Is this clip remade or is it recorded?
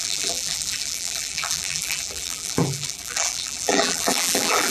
remade